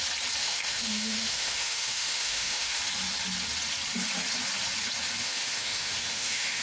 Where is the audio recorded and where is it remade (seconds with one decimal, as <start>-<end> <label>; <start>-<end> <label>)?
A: 0.0-0.4 recorded; 0.4-2.8 remade; 2.8-5.2 recorded; 5.2-6.6 remade